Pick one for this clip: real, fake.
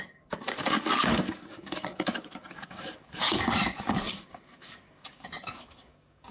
fake